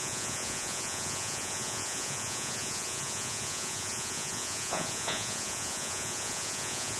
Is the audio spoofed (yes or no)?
yes